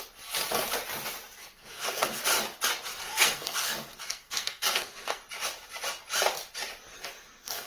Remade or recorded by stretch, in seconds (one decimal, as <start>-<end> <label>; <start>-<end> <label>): 0.0-1.4 recorded; 1.4-2.2 remade; 2.2-2.9 recorded; 2.9-5.2 remade; 5.2-6.9 recorded; 6.9-7.7 remade